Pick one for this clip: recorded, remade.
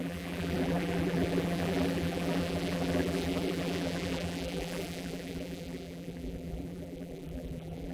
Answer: remade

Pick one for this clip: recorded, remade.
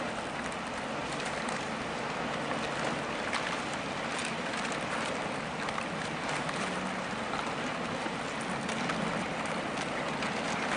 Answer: recorded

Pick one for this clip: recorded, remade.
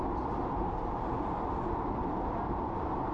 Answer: recorded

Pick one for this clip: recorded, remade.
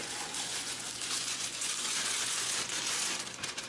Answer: remade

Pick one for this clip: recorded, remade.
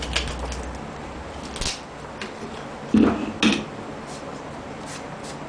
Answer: recorded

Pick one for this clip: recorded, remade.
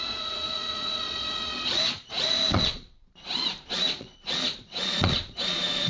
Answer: remade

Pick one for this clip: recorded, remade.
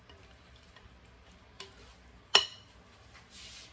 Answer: recorded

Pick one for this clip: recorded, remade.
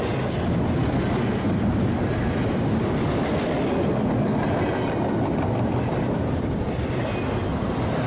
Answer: recorded